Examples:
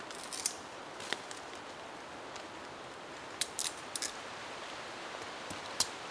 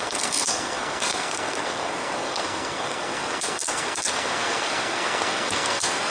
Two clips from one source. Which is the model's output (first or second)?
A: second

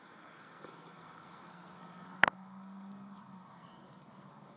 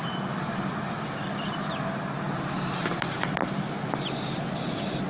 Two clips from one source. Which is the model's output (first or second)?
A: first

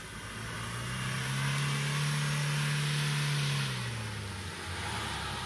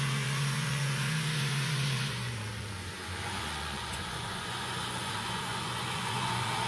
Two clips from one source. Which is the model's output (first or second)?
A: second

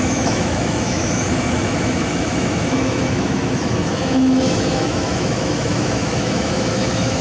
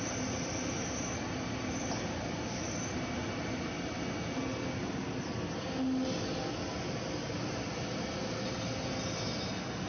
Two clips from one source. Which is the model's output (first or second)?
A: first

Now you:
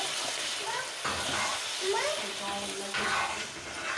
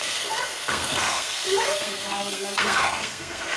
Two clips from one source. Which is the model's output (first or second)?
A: second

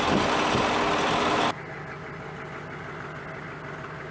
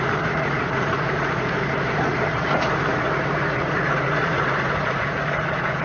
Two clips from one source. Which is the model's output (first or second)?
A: second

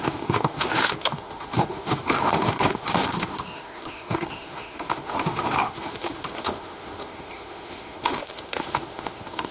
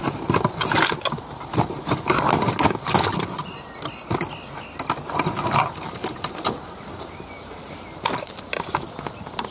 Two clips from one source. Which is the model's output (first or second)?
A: first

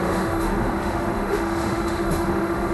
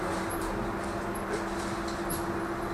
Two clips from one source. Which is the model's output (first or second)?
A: first